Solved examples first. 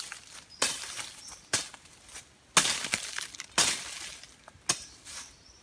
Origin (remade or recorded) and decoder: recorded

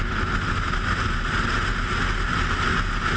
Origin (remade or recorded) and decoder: recorded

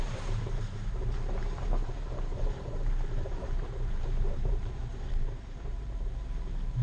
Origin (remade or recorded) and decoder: remade, vocoder, BigVGAN v2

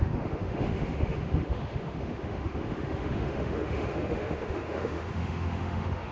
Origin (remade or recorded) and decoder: remade, autoencoder, DAC-VAE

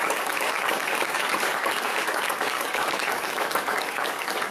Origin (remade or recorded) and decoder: remade, codec, DAC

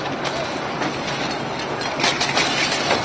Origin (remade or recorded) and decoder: recorded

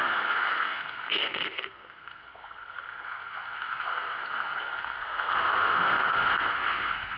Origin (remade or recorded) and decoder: remade, codec, SNAC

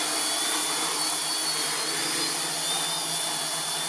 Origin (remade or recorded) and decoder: recorded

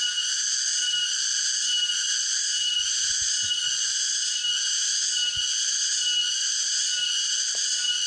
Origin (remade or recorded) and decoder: recorded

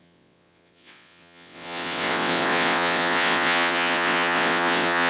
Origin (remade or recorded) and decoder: remade, vocoder, WaveNeXt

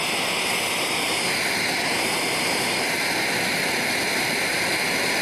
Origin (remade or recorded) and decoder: recorded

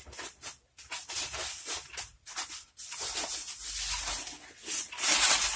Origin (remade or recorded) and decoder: recorded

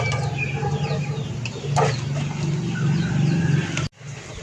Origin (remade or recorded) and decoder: recorded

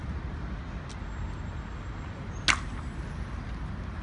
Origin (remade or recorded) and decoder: recorded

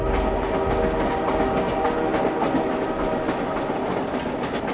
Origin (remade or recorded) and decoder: recorded